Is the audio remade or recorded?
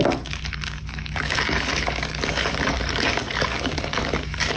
remade